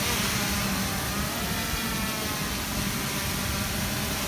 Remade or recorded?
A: recorded